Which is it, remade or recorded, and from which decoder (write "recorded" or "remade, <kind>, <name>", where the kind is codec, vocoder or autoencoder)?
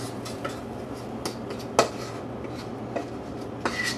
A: recorded